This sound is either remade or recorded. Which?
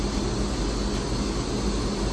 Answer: recorded